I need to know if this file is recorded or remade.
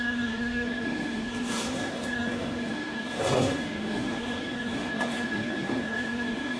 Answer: remade